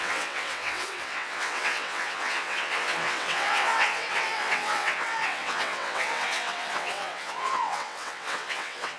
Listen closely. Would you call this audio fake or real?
fake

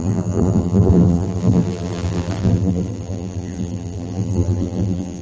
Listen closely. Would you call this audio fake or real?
fake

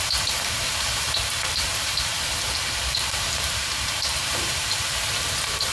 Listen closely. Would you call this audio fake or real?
fake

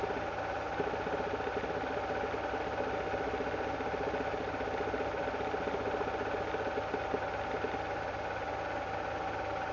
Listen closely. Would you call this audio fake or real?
real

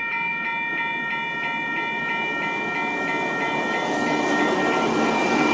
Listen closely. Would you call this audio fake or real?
real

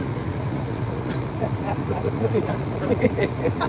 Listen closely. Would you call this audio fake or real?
fake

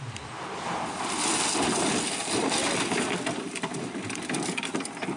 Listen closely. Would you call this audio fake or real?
real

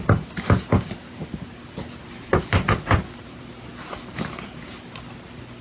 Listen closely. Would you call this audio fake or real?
real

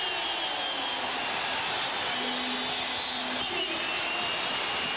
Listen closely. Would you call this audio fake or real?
real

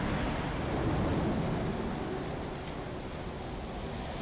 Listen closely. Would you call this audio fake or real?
real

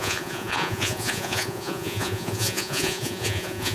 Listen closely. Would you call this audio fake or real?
fake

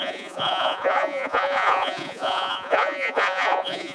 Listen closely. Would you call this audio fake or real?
fake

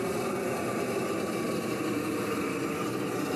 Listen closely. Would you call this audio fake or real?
real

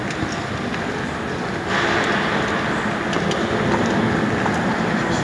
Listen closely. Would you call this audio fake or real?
real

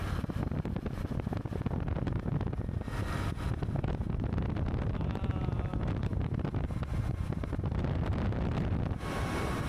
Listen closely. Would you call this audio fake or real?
real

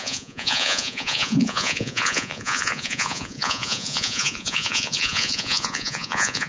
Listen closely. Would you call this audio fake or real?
fake